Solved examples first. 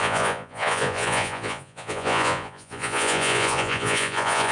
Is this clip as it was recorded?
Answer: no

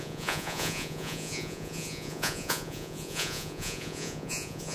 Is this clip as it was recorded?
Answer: no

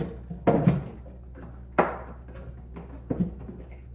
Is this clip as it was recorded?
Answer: yes